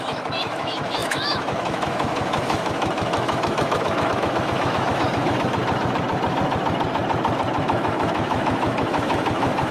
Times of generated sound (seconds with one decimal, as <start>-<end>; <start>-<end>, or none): 0.0-5.6; 7.6-9.7